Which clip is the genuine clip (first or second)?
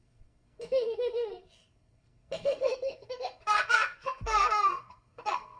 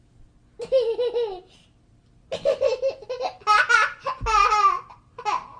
second